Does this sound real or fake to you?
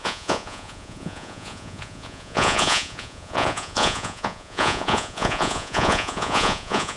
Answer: fake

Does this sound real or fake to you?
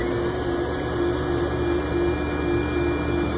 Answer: real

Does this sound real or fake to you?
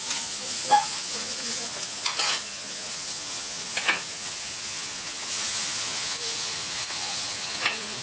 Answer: fake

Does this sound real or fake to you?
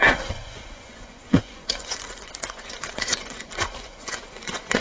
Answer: fake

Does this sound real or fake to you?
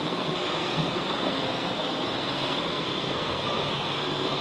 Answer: fake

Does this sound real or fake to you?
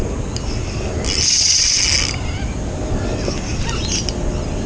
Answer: real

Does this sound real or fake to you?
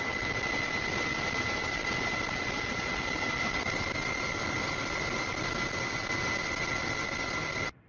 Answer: real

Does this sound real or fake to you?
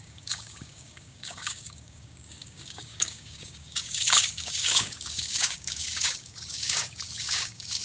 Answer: fake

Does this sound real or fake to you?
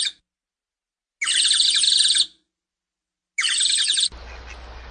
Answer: real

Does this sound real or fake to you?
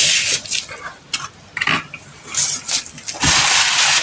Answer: real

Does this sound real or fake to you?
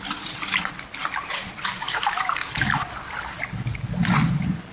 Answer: real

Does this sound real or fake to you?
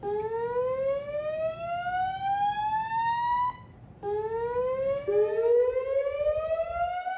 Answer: real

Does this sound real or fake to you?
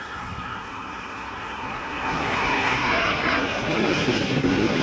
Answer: fake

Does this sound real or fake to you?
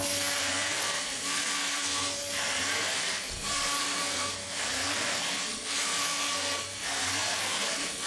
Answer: fake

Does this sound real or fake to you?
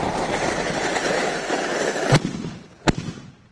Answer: fake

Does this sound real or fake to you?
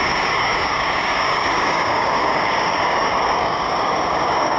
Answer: fake